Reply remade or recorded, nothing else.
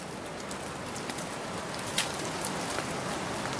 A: recorded